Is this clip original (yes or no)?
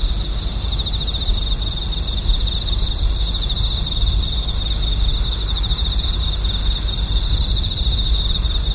yes